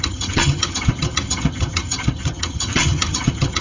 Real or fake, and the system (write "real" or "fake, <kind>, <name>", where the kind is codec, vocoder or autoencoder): fake, vocoder, HiFi-GAN